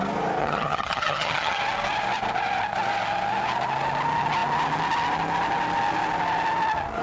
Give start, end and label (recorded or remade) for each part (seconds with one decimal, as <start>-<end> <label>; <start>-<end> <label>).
0.0-0.4 recorded; 0.4-1.6 remade; 1.6-7.0 recorded